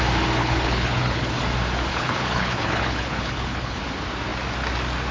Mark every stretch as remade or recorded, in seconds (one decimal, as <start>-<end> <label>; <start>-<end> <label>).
0.0-0.4 recorded; 0.4-1.4 remade; 1.4-1.9 recorded; 1.9-3.8 remade; 3.8-5.1 recorded